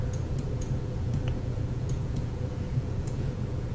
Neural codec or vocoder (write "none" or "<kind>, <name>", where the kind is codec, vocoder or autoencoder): vocoder, Vocos